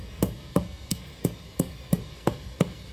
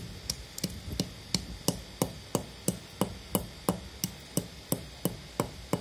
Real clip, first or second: second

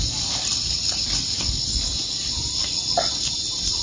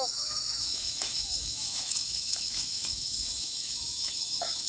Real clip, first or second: first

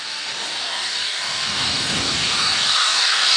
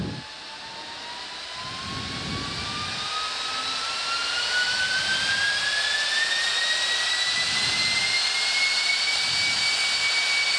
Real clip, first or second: second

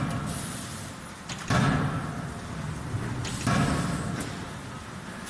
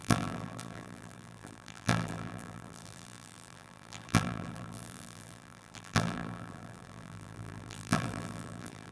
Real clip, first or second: first